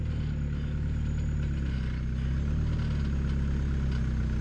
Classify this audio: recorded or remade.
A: recorded